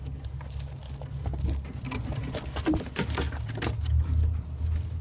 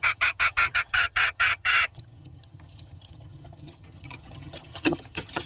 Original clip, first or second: first